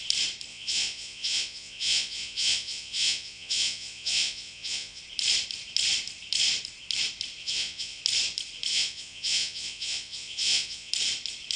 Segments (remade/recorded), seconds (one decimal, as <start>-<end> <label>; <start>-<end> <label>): 0.0-0.5 recorded; 0.5-5.0 remade; 5.0-7.4 recorded; 7.4-8.0 remade; 8.0-8.7 recorded; 8.7-10.9 remade; 10.9-11.6 recorded